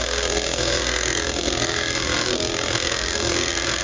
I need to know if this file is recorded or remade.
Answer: remade